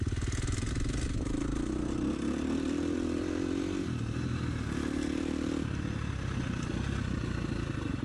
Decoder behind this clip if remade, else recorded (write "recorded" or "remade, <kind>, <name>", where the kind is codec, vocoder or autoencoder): recorded